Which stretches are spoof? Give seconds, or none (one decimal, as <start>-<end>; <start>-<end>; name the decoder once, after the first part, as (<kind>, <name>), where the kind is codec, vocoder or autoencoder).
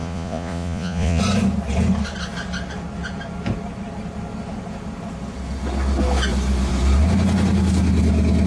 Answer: 0.0-1.2 (vocoder, Vocos)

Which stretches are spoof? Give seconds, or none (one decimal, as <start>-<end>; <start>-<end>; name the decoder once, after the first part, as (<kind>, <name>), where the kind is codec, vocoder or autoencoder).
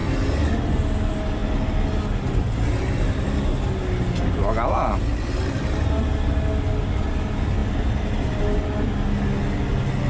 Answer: none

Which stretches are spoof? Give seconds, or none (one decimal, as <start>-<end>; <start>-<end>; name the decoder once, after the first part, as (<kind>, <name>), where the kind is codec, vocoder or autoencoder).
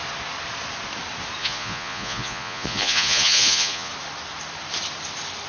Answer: 1.4-3.9 (vocoder, Vocos)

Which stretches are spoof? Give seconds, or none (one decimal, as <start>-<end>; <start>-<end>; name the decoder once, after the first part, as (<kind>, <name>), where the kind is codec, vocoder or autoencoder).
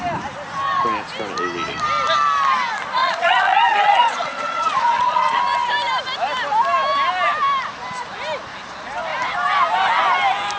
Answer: 3.0-5.4 (vocoder, Vocos)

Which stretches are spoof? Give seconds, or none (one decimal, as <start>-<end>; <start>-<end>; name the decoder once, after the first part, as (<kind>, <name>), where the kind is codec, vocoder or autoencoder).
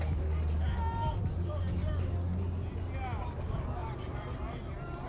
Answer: 3.8-4.4 (vocoder, BigVGAN v2)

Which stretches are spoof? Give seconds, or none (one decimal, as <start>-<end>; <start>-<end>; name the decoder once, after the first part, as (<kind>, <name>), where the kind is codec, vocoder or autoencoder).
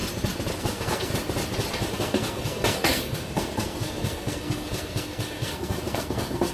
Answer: 0.6-1.1 (codec, SNAC); 1.9-6.5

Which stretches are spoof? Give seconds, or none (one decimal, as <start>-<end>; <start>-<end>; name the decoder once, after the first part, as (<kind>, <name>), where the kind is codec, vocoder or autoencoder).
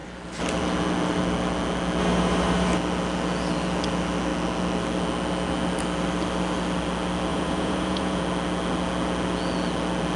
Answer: 7.3-8.2 (vocoder, Vocos)